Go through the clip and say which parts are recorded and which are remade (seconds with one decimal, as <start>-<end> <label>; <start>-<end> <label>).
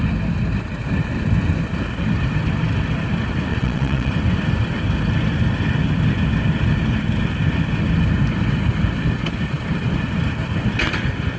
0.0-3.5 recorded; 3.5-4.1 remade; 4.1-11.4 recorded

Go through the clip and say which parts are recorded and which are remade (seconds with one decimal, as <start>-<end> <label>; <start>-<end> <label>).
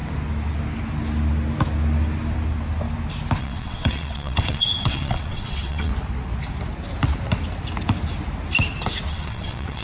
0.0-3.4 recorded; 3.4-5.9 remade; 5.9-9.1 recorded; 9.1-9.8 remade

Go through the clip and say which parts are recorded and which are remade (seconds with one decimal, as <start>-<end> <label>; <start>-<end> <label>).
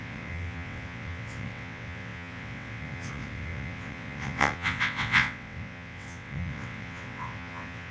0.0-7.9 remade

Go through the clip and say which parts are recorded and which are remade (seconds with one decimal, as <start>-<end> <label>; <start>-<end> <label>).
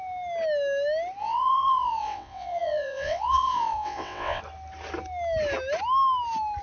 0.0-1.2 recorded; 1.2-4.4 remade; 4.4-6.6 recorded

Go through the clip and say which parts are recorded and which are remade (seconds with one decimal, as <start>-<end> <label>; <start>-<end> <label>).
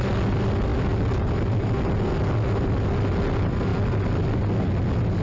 0.0-5.2 recorded